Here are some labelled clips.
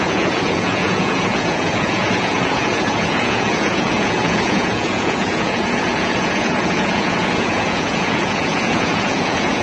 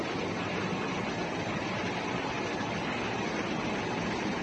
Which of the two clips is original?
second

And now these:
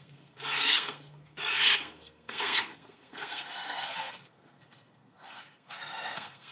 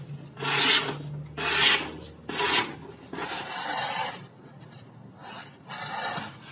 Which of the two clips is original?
second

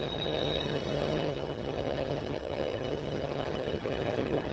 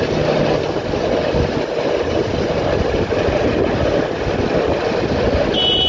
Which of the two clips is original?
second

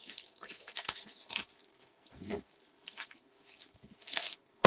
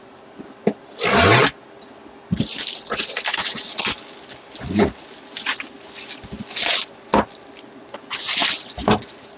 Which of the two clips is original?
second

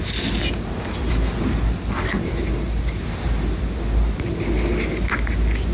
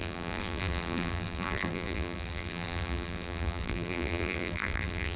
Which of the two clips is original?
first